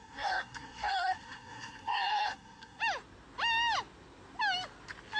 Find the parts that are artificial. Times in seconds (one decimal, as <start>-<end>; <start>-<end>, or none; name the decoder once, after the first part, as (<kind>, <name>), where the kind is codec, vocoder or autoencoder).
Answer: 0.0-2.8 (codec, SNAC)